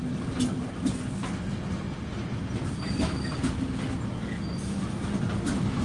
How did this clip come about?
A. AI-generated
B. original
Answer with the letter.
B